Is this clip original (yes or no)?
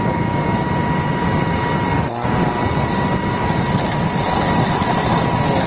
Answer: yes